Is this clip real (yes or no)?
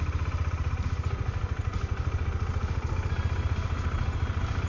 yes